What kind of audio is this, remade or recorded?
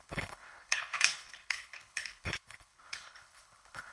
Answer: remade